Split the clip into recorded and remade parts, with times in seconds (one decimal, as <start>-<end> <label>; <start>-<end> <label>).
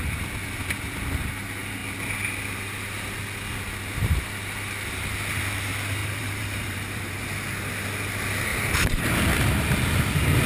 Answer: 0.0-6.0 recorded; 6.0-7.2 remade; 7.2-8.5 recorded; 8.5-9.0 remade; 9.0-10.5 recorded